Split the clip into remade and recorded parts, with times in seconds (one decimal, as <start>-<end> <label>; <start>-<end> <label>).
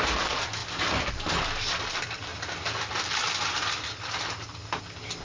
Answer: 0.0-5.2 recorded